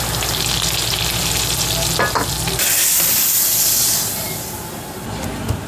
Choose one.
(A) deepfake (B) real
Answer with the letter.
B